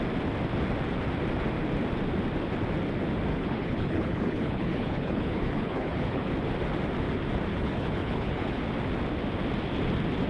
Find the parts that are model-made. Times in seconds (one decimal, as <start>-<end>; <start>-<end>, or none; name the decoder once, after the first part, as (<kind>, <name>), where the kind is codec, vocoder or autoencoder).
3.3-6.3 (codec, HILCodec); 7.5-8.6